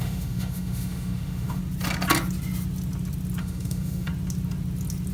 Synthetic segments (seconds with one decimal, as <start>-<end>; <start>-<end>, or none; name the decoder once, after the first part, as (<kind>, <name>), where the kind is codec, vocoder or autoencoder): 0.0-1.6 (autoencoder, DAC-VAE); 3.4-4.1